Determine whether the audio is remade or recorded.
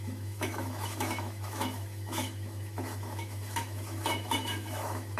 remade